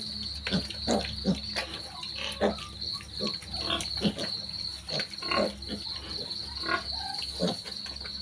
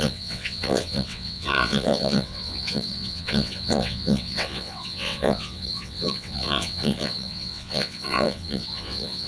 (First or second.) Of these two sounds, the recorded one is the first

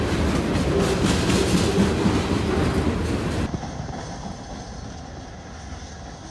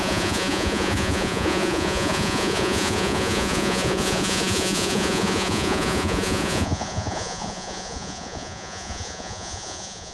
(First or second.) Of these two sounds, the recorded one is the first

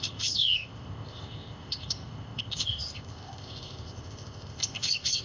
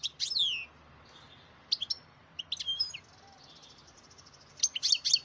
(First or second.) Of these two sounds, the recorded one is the second